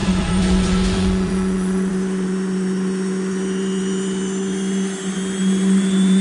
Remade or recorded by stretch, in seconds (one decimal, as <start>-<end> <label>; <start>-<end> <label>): 0.0-1.9 remade; 1.9-6.2 recorded